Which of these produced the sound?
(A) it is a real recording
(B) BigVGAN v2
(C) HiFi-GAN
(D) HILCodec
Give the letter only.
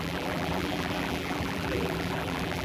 B